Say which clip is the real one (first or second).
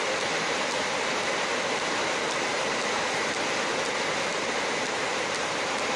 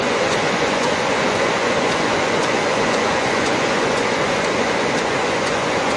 first